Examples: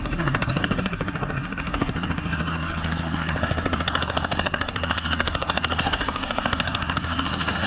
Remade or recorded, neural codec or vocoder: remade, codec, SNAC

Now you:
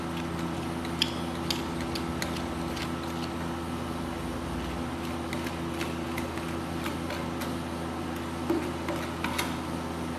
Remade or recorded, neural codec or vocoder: recorded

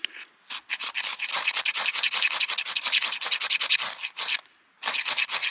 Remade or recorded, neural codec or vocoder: recorded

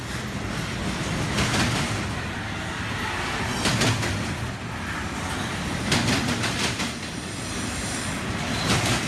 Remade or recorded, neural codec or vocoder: recorded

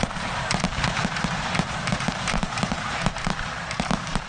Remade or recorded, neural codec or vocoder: remade, vocoder, BigVGAN v2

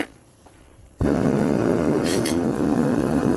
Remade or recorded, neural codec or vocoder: remade, vocoder, Vocos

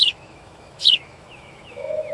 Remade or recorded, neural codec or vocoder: remade, autoencoder, DAC-VAE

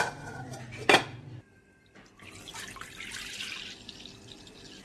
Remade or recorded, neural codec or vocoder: recorded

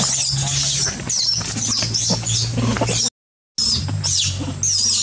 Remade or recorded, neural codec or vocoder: recorded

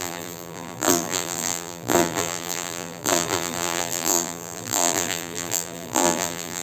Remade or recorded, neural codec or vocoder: remade, vocoder, BigVGAN v2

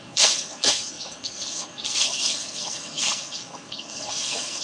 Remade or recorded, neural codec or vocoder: remade, codec, SNAC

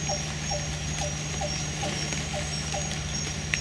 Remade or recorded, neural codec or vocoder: recorded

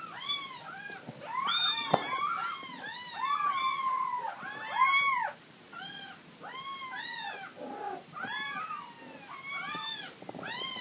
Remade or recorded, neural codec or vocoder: recorded